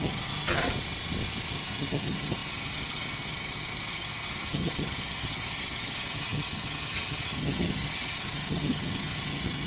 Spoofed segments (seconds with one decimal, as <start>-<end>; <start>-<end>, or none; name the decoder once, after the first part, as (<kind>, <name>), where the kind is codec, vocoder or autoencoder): 0.0-0.6 (vocoder, HiFi-GAN); 1.5-9.7